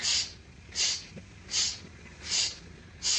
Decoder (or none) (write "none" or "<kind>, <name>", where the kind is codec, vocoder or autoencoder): none